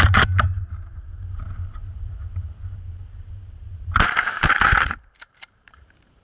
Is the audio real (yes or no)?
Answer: no